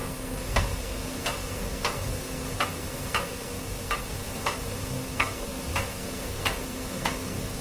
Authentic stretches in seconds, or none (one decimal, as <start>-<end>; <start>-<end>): none